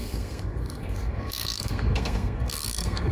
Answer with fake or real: fake